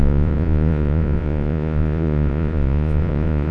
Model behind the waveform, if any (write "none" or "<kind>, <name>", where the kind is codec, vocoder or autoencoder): vocoder, Vocos